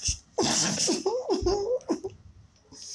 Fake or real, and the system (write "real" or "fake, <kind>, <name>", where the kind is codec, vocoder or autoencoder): real